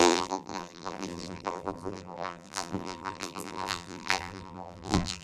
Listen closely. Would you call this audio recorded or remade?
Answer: remade